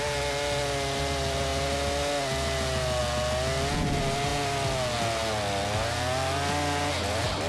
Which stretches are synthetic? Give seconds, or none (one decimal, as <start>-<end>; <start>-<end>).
none